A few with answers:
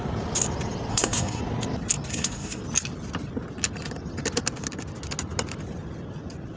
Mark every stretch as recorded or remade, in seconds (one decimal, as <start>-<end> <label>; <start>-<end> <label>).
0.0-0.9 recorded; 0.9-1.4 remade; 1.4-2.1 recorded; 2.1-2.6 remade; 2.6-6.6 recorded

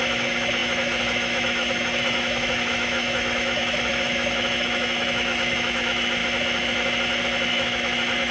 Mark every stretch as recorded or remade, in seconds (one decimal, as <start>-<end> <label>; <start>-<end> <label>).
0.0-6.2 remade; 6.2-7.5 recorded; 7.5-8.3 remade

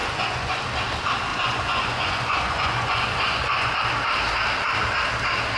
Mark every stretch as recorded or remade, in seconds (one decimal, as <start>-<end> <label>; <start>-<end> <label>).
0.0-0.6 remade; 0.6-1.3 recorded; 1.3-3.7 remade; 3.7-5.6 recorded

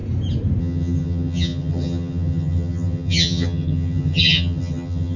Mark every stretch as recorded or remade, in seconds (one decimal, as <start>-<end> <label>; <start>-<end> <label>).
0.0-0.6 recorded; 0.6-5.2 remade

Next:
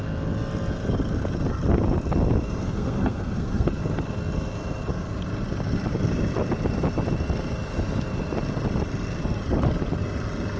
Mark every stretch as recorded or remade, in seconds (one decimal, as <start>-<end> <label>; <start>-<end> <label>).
0.0-2.6 recorded; 2.6-3.7 remade; 3.7-10.6 recorded